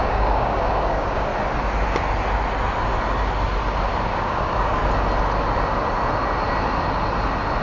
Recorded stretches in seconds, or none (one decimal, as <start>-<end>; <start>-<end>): 1.3-4.2; 4.8-7.6